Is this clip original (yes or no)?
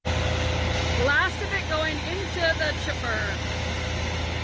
yes